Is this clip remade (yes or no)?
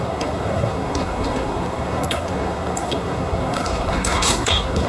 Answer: yes